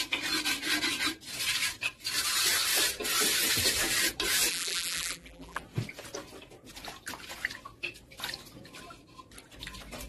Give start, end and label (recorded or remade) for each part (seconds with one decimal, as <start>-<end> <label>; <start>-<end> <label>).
0.0-4.5 recorded; 4.5-5.6 remade; 5.6-10.1 recorded